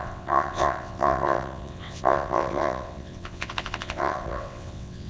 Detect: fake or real fake